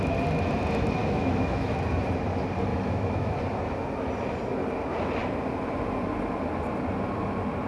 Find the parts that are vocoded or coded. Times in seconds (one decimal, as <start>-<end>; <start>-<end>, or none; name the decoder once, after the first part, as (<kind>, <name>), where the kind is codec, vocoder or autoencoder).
1.0-1.7 (autoencoder, DAC-VAE); 2.7-3.4